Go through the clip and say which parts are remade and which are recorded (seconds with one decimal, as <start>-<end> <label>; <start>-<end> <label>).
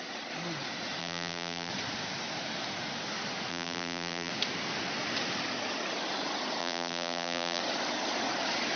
0.0-1.0 recorded; 1.0-1.7 remade; 1.7-3.5 recorded; 3.5-4.3 remade; 4.3-6.6 recorded; 6.6-7.6 remade; 7.6-8.8 recorded